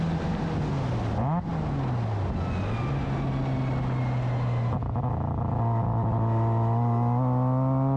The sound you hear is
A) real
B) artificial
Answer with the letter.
A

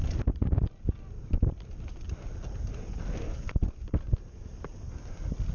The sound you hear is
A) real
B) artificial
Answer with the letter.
A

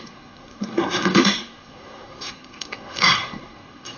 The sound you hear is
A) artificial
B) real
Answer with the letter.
A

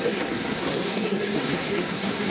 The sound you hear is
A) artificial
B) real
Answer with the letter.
A